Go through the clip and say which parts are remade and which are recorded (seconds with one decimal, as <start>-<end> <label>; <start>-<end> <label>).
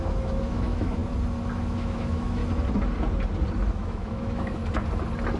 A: 0.0-1.0 remade; 1.0-1.6 recorded; 1.6-2.4 remade; 2.4-3.7 recorded; 3.7-4.6 remade; 4.6-5.4 recorded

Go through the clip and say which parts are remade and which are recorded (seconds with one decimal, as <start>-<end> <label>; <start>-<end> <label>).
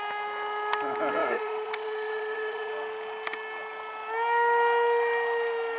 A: 0.0-1.2 recorded; 1.2-2.7 remade; 2.7-5.8 recorded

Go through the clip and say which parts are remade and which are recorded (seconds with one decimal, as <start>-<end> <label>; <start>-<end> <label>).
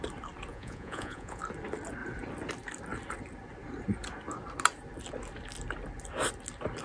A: 0.0-0.5 recorded; 0.5-1.4 remade; 1.4-6.8 recorded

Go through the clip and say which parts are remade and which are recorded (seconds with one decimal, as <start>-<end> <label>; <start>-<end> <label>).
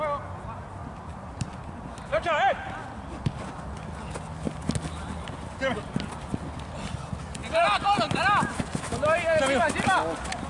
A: 0.0-1.1 recorded; 1.1-1.7 remade; 1.7-10.5 recorded